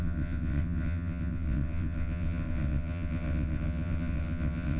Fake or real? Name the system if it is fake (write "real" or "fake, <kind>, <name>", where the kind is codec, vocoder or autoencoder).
fake, vocoder, WaveNeXt